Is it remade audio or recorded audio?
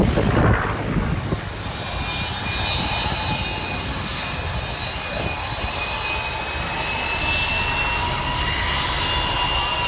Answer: recorded